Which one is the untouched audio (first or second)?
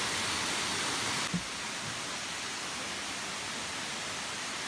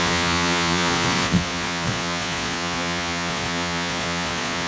first